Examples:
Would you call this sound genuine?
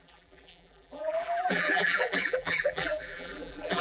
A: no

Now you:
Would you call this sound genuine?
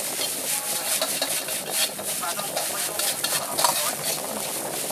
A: yes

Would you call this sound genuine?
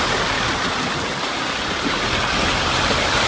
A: yes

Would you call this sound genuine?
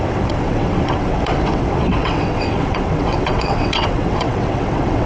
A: no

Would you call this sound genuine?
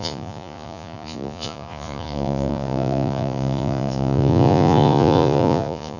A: no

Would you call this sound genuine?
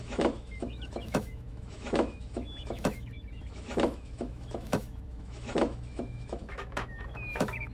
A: no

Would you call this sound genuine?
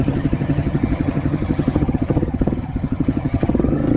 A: no